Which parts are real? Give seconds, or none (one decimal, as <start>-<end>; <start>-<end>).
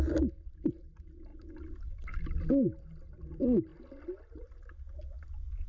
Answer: 0.0-5.7